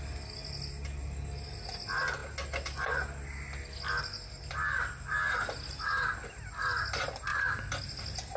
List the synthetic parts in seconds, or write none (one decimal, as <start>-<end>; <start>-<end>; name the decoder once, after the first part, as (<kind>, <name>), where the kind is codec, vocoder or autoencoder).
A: none